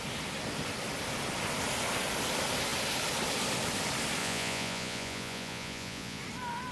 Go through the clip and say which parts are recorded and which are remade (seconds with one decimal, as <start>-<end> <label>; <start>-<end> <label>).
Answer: 0.0-4.2 recorded; 4.2-6.2 remade; 6.2-6.7 recorded